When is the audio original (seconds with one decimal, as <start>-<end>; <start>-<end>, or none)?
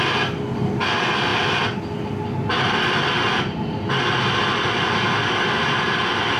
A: 0.0-6.4